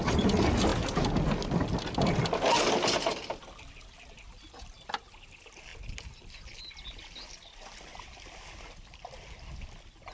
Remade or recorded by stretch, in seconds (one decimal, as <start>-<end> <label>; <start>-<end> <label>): 0.0-10.1 recorded

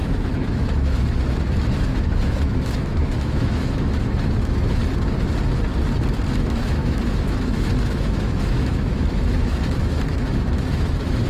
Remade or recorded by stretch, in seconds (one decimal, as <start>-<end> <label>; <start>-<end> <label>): 0.0-4.8 remade; 4.8-6.3 recorded; 6.3-11.3 remade

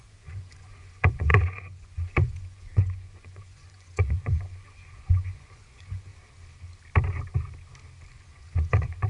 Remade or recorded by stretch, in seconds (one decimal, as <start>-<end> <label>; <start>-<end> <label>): 0.0-6.1 remade; 6.1-8.1 recorded; 8.1-9.1 remade

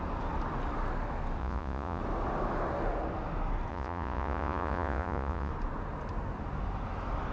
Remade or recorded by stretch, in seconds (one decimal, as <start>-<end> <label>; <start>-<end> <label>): 0.0-1.4 recorded; 1.4-2.0 remade; 2.0-3.7 recorded; 3.7-5.5 remade; 5.5-7.3 recorded

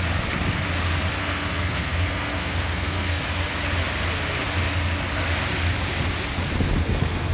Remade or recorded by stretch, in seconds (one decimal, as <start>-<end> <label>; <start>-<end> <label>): 0.0-1.2 recorded; 1.2-3.2 remade; 3.2-6.8 recorded; 6.8-7.3 remade

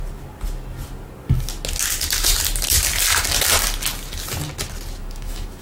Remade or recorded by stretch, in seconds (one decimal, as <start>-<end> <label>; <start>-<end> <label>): 0.0-5.0 recorded; 5.0-5.6 remade